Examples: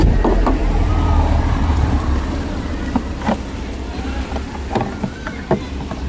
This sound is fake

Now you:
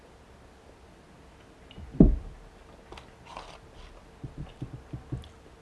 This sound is real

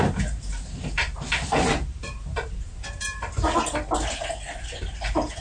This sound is fake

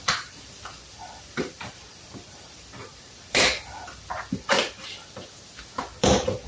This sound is fake